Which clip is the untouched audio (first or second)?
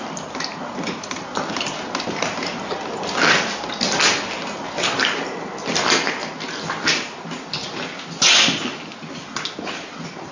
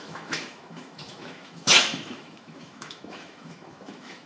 first